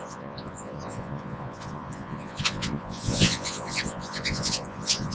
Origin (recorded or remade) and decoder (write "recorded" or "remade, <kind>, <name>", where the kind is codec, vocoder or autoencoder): remade, vocoder, Vocos